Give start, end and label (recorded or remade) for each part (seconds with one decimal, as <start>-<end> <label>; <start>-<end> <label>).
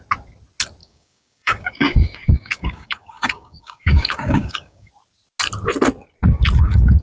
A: 0.0-0.8 recorded; 0.8-4.9 remade; 4.9-7.0 recorded